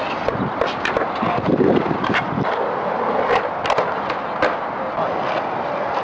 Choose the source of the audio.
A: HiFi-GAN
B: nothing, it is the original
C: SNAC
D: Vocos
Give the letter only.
B